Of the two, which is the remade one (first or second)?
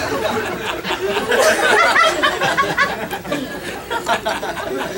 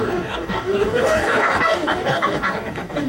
second